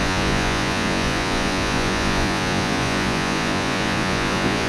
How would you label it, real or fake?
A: fake